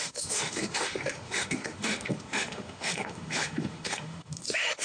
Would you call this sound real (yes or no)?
no